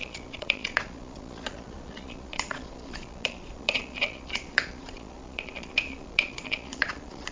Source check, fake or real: fake